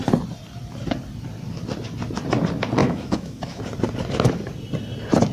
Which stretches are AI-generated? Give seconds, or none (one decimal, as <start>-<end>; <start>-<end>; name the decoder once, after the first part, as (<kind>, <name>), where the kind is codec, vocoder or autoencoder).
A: 2.8-3.6 (autoencoder, DAC-VAE)

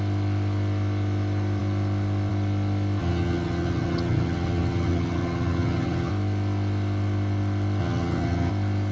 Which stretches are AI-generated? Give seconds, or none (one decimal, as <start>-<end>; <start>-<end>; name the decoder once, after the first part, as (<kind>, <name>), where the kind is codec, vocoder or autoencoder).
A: 3.0-6.1 (vocoder, HiFi-GAN); 7.8-8.5

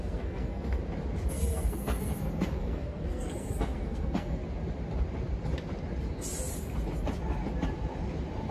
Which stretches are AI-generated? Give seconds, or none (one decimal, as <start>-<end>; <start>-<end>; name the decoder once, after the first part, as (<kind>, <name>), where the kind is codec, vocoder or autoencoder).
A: 0.0-0.8 (codec, SNAC); 1.3-4.4

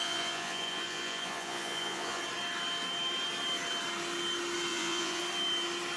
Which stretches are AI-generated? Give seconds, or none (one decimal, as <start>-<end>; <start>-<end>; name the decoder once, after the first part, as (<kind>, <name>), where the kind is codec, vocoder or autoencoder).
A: 0.0-2.2 (vocoder, Vocos); 4.7-5.2